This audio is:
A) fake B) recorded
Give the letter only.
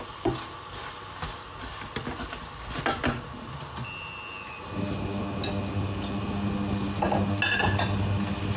B